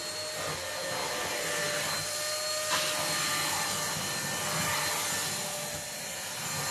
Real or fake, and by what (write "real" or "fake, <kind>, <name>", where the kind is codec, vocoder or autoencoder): real